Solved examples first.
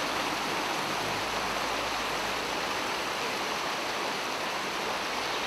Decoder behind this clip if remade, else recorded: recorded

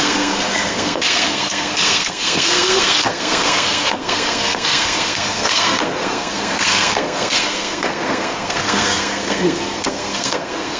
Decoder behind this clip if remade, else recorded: remade, codec, SNAC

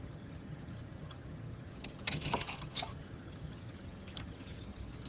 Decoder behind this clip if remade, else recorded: remade, vocoder, HiFi-GAN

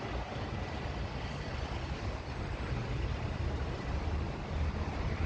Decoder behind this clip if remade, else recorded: recorded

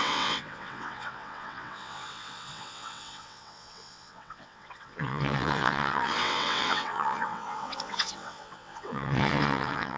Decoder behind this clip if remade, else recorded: remade, vocoder, WaveNeXt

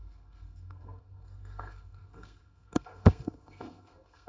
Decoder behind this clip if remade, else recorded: remade, codec, SNAC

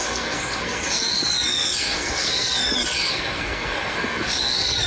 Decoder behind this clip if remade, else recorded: remade, codec, SNAC